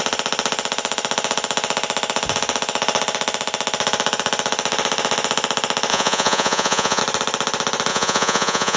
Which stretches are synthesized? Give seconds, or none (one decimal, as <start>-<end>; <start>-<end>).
5.9-7.0; 7.9-8.8